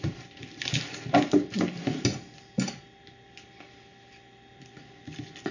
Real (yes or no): yes